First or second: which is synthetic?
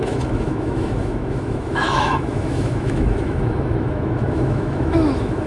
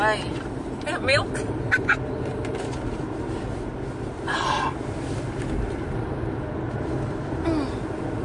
first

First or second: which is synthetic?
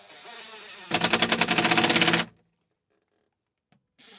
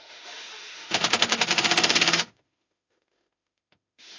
second